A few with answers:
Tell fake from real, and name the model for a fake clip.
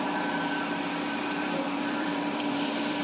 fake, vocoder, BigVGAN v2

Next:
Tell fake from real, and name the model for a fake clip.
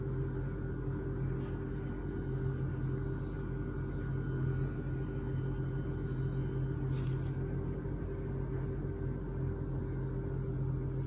real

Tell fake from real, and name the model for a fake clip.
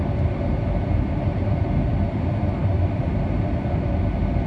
fake, vocoder, BigVGAN v2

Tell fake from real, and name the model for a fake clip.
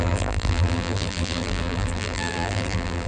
fake, vocoder, BigVGAN v2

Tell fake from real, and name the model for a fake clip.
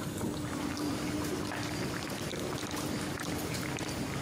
real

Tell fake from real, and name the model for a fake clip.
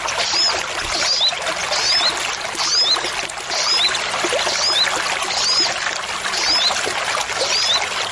real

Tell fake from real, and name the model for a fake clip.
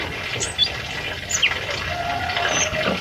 real